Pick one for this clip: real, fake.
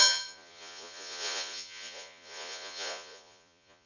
fake